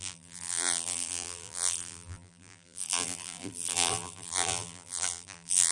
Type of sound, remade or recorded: remade